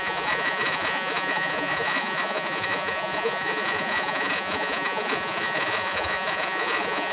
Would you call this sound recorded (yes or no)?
no